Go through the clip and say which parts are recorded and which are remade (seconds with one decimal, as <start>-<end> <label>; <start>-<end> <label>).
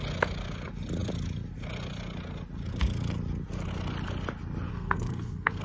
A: 0.0-4.7 recorded; 4.7-5.6 remade